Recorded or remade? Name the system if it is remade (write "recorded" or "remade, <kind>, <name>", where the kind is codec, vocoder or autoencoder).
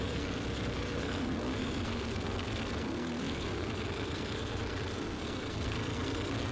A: remade, codec, SNAC